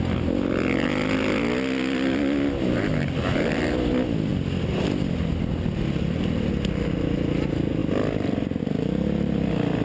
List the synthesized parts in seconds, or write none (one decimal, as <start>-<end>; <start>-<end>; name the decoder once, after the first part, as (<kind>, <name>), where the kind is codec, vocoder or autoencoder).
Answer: none